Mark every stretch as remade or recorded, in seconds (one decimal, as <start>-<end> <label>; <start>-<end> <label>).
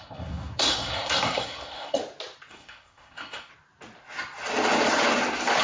0.0-2.0 remade; 2.0-2.5 recorded; 2.5-3.5 remade; 3.5-5.6 recorded